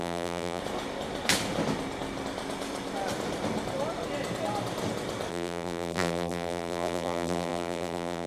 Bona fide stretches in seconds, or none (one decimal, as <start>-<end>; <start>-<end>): 0.6-5.3